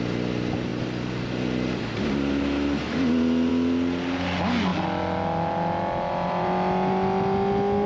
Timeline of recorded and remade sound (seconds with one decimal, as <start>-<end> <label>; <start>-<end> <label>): 0.0-7.9 recorded